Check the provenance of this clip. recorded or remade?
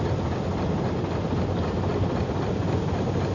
recorded